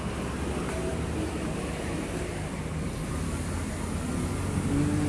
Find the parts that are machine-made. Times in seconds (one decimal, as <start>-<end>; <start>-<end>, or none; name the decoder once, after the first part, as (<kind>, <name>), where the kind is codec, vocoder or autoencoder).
none